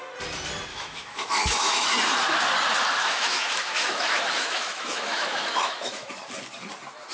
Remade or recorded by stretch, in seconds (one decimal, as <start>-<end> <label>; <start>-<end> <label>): 0.0-0.7 recorded; 0.7-1.9 remade; 1.9-3.0 recorded; 3.0-6.2 remade; 6.2-7.1 recorded